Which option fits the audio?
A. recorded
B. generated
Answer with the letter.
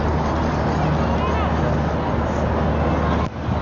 A